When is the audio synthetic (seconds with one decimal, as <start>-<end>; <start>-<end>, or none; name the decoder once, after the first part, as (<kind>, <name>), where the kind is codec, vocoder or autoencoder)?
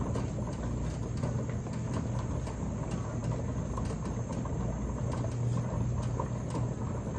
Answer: none